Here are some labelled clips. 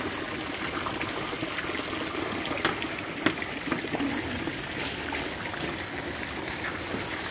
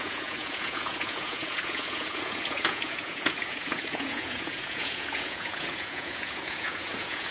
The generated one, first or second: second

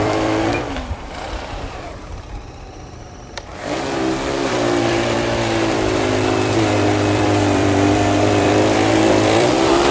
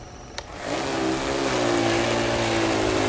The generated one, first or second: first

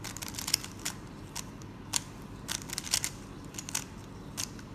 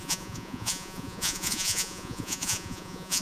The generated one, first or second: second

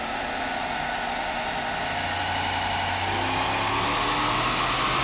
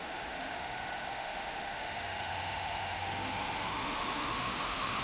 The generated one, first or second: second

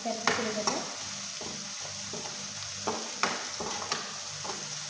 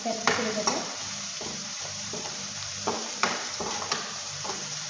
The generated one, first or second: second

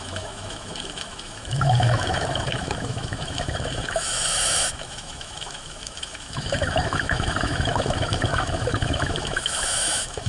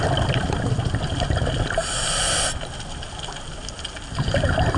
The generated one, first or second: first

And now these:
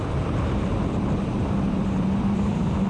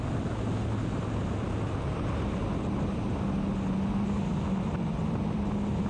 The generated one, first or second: first